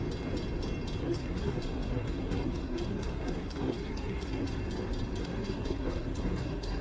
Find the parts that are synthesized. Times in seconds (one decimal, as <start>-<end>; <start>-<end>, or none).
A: 1.0-4.6; 5.2-6.8